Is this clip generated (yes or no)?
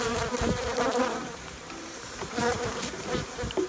yes